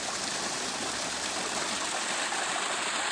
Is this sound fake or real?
real